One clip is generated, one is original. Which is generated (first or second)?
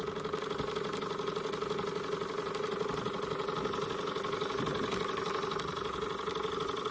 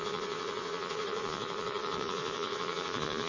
second